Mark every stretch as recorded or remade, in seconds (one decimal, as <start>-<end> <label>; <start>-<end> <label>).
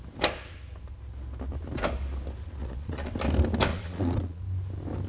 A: 0.0-2.6 recorded; 2.6-3.1 remade; 3.1-3.7 recorded; 3.7-4.4 remade; 4.4-5.1 recorded